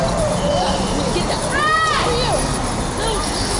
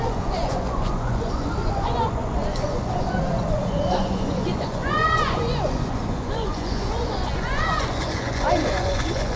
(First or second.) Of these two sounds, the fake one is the second